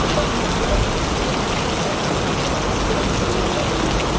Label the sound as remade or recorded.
recorded